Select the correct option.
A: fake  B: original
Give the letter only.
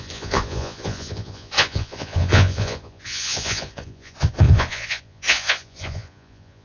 A